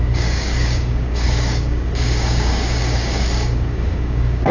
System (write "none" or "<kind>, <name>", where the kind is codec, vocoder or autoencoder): codec, DAC